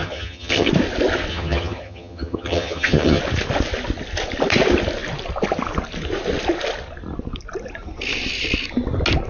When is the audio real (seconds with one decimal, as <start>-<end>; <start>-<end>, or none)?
0.7-1.3; 3.2-9.3